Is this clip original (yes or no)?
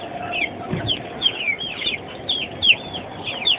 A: yes